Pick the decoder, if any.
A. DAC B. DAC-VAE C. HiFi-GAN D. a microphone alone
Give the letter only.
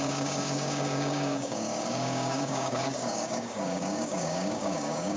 A